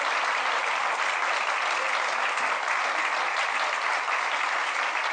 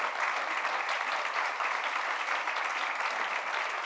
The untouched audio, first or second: first